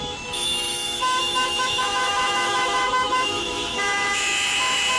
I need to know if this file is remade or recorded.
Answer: remade